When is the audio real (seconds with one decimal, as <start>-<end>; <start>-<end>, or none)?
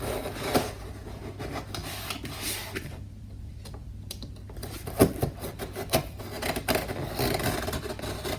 0.0-1.8; 6.2-8.4